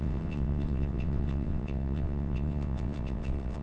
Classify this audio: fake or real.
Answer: fake